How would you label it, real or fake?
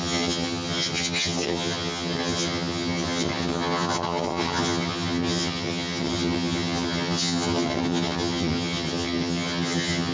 fake